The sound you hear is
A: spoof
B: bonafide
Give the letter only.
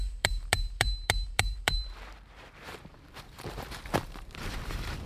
A